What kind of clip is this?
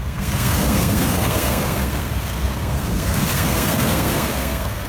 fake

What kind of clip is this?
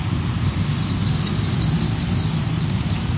real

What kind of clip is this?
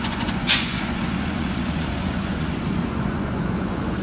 fake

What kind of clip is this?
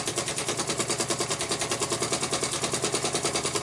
real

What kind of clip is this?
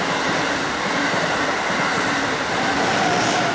real